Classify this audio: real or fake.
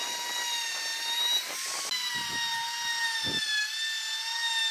real